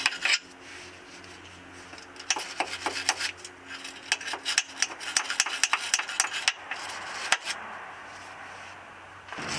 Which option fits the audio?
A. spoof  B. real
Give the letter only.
B